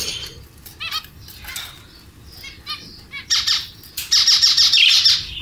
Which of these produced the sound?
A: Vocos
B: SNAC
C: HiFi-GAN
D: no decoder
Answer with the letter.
D